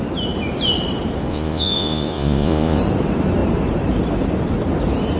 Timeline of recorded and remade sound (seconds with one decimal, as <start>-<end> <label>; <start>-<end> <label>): 0.0-1.3 recorded; 1.3-2.8 remade; 2.8-5.2 recorded